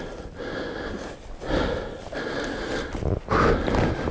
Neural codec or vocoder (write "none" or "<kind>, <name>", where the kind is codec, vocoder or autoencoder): none